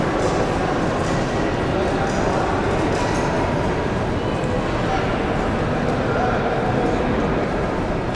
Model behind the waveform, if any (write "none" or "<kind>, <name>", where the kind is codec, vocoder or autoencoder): none